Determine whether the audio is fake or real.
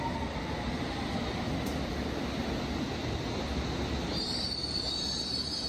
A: real